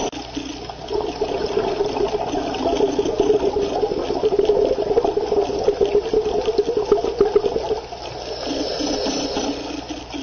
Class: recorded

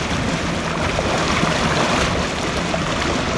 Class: recorded